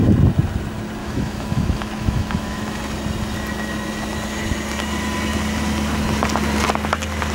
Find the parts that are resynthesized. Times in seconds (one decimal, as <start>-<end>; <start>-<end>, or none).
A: 1.0-2.8